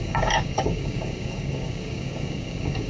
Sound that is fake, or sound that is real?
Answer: fake